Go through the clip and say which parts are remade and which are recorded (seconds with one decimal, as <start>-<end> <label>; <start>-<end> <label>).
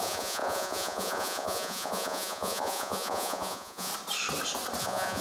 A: 0.0-3.9 remade; 3.9-4.8 recorded; 4.8-5.2 remade